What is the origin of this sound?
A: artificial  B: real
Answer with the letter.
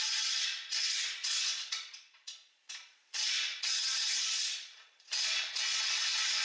A